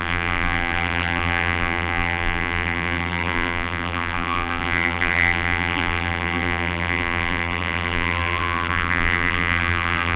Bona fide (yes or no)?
no